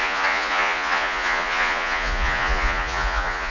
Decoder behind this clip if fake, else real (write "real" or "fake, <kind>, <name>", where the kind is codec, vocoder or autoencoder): fake, vocoder, Vocos